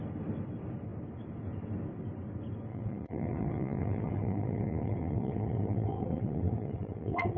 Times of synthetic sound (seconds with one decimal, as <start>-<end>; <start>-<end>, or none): 2.7-7.4